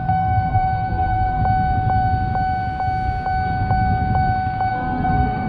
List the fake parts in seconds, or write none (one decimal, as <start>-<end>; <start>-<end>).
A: 0.0-1.4; 4.7-5.5